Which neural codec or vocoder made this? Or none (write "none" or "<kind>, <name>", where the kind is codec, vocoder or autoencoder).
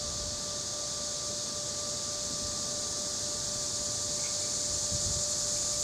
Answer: vocoder, BigVGAN v2